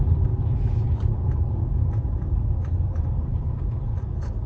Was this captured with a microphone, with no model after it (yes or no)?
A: yes